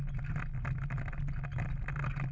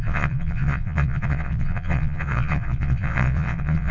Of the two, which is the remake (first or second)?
second